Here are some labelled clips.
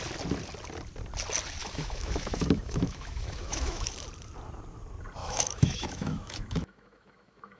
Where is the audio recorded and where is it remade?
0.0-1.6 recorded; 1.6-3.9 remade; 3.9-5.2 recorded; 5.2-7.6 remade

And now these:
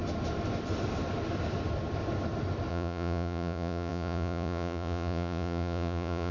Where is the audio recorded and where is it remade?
0.0-2.7 recorded; 2.7-6.3 remade

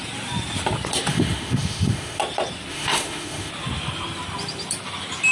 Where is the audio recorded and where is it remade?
0.0-1.1 recorded; 1.1-2.2 remade; 2.2-2.7 recorded; 2.7-3.5 remade; 3.5-5.3 recorded

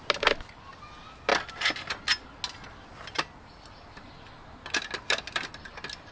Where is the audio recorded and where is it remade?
0.0-6.1 recorded

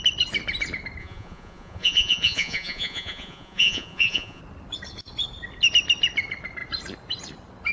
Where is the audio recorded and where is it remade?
0.0-1.0 recorded; 1.0-4.4 remade; 4.4-7.7 recorded

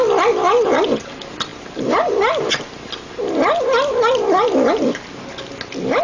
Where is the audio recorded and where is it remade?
0.0-6.0 recorded

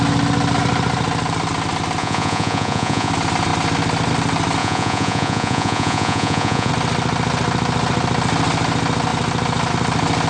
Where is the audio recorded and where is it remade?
0.0-2.0 recorded; 2.0-3.1 remade; 3.1-4.6 recorded; 4.6-6.7 remade; 6.7-10.3 recorded

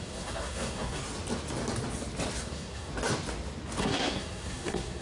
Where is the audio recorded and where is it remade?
0.0-1.0 remade; 1.0-2.4 recorded; 2.4-2.9 remade; 2.9-3.8 recorded; 3.8-5.0 remade